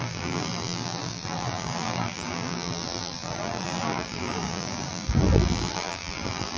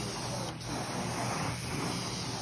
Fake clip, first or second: first